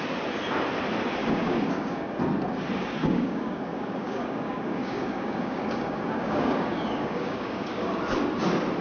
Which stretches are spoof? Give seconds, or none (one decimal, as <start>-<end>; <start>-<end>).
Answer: 1.2-2.1; 3.0-8.0